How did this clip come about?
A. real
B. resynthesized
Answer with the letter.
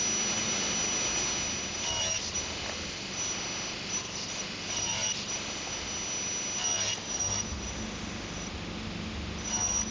A